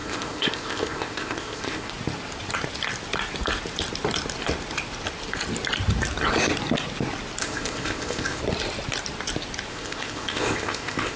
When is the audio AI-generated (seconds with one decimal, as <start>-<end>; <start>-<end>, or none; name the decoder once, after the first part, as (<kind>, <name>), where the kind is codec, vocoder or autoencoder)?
0.0-1.9 (codec, ZipCodec); 7.4-8.4; 9.7-11.2